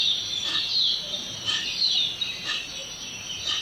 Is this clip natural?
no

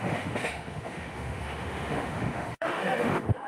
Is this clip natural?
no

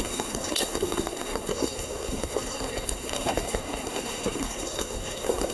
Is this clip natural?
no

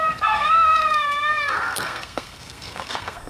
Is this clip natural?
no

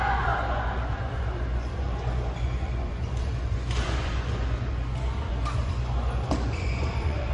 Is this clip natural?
no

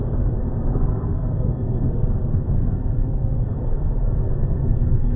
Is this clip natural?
no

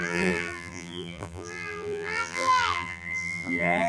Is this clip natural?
no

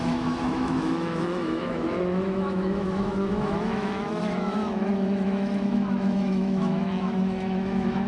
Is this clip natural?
no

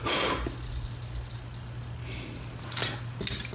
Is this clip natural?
yes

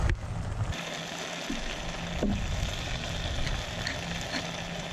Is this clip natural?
yes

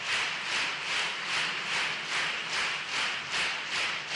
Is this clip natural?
yes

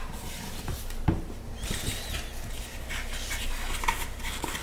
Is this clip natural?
yes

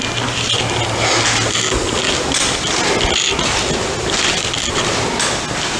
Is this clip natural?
yes